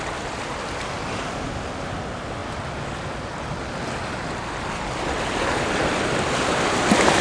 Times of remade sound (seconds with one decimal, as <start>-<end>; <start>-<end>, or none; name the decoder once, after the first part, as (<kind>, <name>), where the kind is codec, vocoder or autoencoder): none

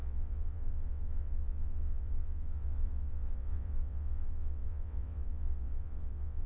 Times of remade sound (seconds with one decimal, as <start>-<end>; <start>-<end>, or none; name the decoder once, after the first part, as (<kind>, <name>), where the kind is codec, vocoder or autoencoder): 0.0-6.5 (vocoder, WaveNeXt)

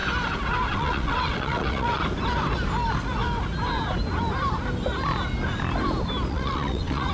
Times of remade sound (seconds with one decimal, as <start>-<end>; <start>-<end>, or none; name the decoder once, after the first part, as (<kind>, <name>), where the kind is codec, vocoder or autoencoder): 0.7-2.0 (vocoder, WaveNeXt); 6.3-7.1

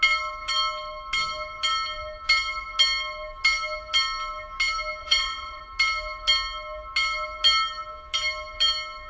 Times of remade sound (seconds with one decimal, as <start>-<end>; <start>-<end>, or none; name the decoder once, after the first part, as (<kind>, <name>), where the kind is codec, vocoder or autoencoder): 5.0-5.6 (vocoder, WaveNeXt)

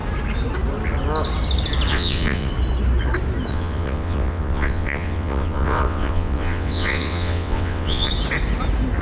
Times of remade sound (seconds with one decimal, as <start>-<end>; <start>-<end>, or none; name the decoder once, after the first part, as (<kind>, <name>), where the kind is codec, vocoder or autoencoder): 1.9-2.5 (vocoder, WaveNeXt); 3.5-8.1